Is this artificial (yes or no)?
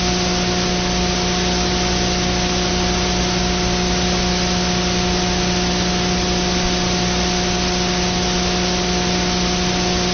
no